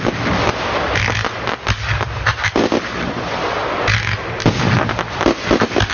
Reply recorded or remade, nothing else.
recorded